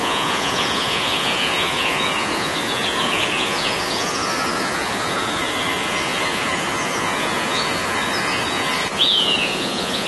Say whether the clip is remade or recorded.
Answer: remade